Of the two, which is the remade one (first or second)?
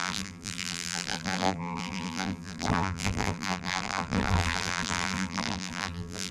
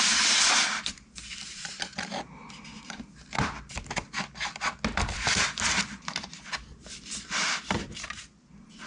first